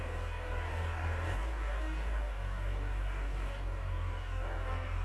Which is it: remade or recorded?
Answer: remade